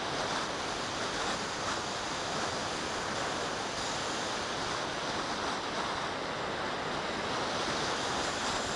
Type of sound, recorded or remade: recorded